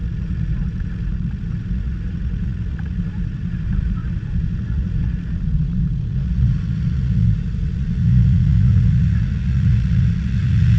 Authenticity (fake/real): fake